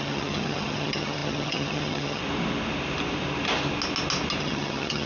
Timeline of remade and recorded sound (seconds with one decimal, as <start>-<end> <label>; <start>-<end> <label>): 0.0-2.2 remade; 2.2-4.4 recorded; 4.4-5.1 remade